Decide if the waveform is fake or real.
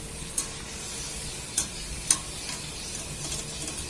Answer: real